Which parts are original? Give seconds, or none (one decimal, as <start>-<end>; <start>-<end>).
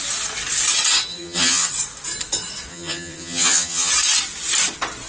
0.0-1.1; 1.7-2.7; 3.9-5.1